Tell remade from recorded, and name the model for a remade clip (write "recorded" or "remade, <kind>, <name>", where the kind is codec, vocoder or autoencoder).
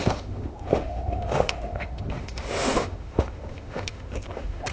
remade, autoencoder, DAC-VAE